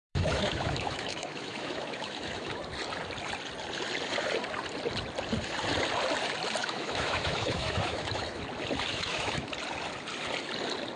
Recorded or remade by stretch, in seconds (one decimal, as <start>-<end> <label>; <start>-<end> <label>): 0.0-2.6 remade; 2.6-6.6 recorded; 6.6-8.4 remade; 8.4-8.9 recorded; 8.9-9.5 remade; 9.5-11.0 recorded